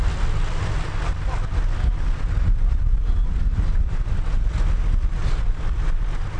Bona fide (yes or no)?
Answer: yes